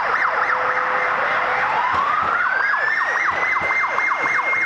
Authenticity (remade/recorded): recorded